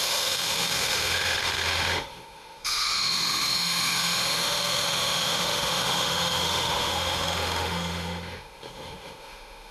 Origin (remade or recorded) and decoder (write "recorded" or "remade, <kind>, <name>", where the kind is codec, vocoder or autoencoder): remade, autoencoder, DAC-VAE